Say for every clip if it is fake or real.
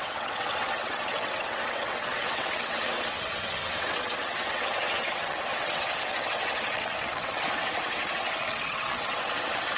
fake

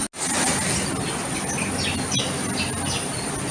real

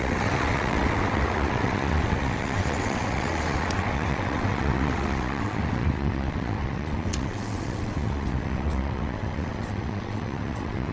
fake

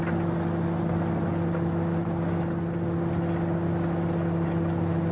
real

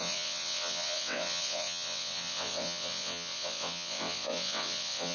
fake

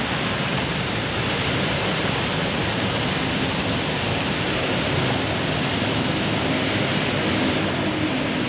real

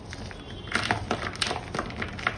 real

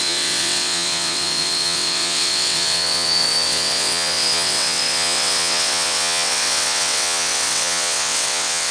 fake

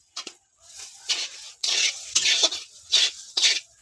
fake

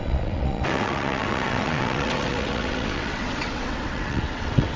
fake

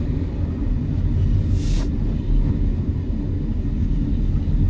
real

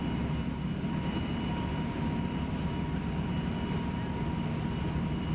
real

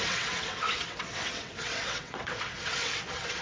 fake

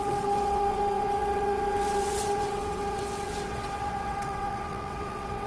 fake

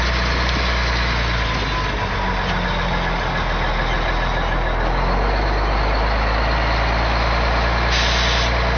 real